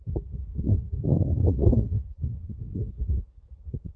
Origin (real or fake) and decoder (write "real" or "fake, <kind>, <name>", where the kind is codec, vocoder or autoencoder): fake, codec, SNAC